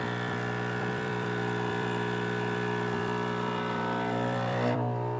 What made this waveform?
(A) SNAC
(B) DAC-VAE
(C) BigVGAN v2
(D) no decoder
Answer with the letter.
C